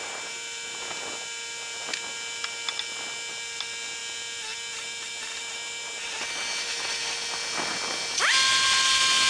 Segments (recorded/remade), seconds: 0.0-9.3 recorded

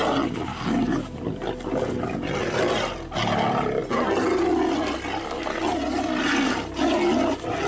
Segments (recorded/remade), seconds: 0.0-7.7 recorded

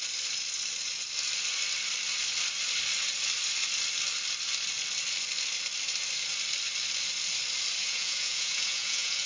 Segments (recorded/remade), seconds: 0.0-7.8 recorded; 7.8-9.3 remade

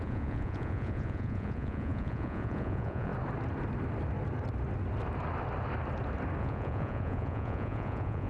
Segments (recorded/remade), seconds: 0.0-3.1 remade; 3.1-6.4 recorded; 6.4-8.3 remade

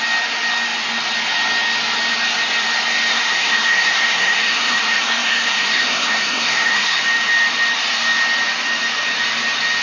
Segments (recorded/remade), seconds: 0.0-3.1 recorded; 3.1-7.0 remade; 7.0-9.8 recorded